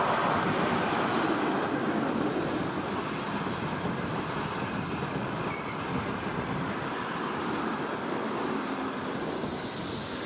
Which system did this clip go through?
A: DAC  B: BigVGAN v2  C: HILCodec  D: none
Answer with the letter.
D